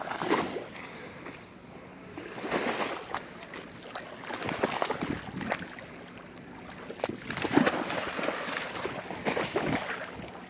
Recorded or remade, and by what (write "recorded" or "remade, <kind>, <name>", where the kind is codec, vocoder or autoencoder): recorded